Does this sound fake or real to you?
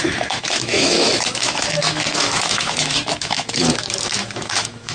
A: fake